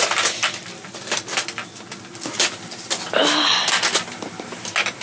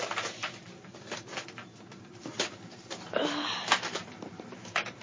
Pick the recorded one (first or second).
first